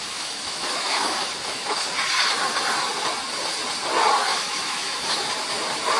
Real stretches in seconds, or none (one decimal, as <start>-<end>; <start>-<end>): 1.9-4.3; 5.3-6.0

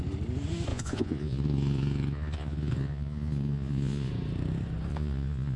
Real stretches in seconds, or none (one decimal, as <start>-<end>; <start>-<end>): 0.0-0.7; 4.1-4.9

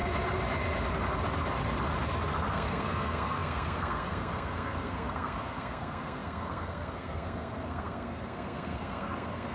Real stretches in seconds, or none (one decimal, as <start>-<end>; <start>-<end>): 0.0-2.5

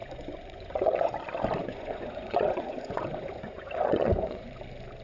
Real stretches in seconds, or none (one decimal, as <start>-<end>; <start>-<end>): 1.1-1.6; 4.6-5.0

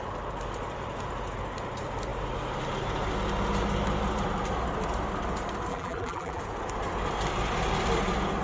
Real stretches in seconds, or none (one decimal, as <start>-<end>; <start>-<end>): 0.0-5.7; 6.4-8.4